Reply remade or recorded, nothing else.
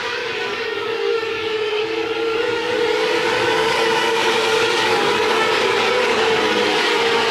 remade